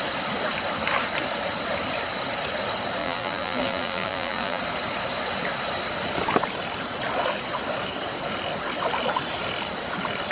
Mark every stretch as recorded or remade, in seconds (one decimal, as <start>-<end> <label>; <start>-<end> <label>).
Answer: 0.0-3.0 recorded; 3.0-4.6 remade; 4.6-10.3 recorded

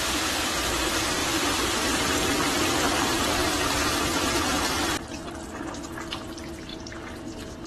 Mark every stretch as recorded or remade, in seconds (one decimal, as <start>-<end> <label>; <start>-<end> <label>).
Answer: 0.0-1.2 recorded; 1.2-4.5 remade; 4.5-6.7 recorded; 6.7-7.3 remade; 7.3-7.7 recorded

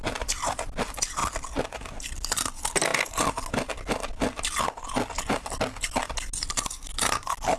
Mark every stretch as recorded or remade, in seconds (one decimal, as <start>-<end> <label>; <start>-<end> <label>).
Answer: 0.0-7.6 recorded